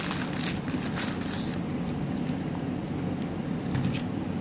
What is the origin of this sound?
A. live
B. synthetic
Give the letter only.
A